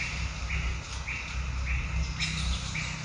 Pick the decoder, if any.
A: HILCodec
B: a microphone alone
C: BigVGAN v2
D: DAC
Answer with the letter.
B